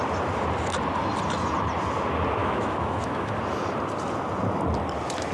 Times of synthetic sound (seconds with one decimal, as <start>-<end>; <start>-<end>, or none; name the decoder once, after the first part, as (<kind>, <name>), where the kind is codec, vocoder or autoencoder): 2.4-3.3 (autoencoder, DAC-VAE)